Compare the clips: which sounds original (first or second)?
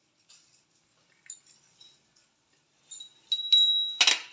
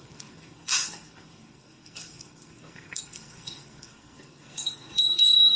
first